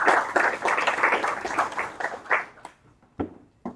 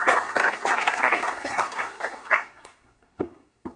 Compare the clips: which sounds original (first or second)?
first